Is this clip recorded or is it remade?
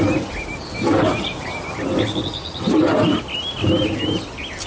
recorded